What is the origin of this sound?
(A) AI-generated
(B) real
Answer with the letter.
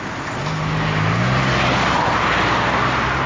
B